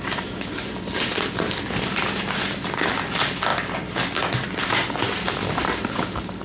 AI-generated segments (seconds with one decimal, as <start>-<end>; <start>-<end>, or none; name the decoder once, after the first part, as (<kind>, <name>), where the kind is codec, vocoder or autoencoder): none

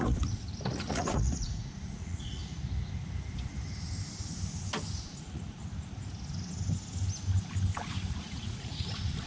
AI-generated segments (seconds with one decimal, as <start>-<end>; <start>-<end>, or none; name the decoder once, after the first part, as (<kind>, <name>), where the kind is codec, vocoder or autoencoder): 0.0-2.4 (vocoder, Vocos); 5.1-5.6; 8.1-9.3

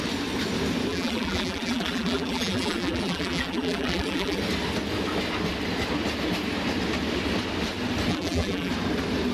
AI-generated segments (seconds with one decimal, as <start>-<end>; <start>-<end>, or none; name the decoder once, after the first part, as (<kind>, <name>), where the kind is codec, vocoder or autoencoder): 0.9-4.4 (vocoder, BigVGAN v2); 8.1-8.7

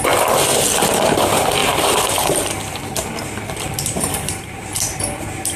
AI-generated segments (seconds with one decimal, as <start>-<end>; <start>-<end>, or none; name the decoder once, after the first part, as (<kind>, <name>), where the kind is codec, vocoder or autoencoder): 1.6-5.0 (vocoder, BigVGAN v2)

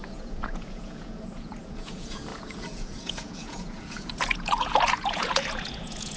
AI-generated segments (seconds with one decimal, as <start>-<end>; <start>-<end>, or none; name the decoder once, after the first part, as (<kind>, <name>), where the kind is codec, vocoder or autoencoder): 0.0-6.2 (vocoder, Vocos)

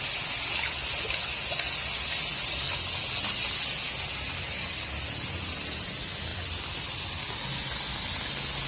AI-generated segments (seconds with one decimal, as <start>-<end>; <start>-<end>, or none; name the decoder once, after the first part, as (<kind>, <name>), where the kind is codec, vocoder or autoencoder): none